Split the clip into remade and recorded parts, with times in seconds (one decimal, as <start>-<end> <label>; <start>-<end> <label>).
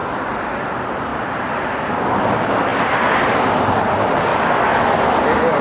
0.0-0.5 remade; 0.5-2.7 recorded; 2.7-3.5 remade; 3.5-5.6 recorded